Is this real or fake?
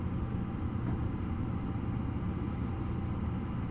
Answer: real